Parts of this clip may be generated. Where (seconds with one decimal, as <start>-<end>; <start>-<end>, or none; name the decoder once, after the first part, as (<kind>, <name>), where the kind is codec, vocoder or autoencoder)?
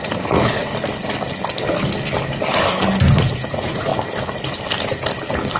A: 0.0-0.7 (vocoder, Vocos); 3.1-3.9